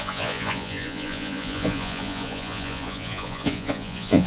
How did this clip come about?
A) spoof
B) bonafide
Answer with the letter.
A